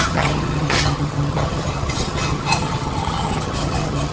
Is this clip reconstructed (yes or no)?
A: yes